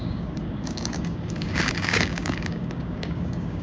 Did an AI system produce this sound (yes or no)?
yes